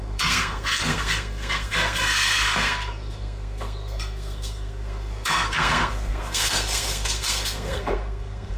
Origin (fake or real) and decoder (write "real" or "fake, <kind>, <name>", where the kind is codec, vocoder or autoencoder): fake, codec, SNAC